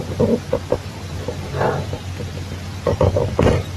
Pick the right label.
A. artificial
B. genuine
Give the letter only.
B